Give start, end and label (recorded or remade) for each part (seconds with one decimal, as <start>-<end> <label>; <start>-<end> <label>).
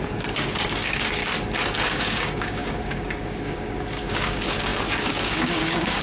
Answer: 0.0-1.2 remade; 1.2-1.9 recorded; 1.9-6.0 remade